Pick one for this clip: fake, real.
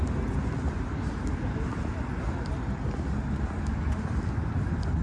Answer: real